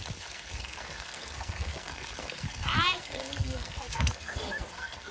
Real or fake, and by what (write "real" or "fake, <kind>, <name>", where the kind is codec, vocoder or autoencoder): fake, codec, SNAC